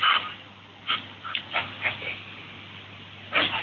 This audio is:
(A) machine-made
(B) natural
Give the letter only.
B